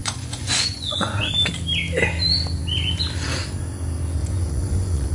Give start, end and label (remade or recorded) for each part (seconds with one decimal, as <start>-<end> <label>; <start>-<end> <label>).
0.0-1.2 remade; 1.2-4.2 recorded; 4.2-5.1 remade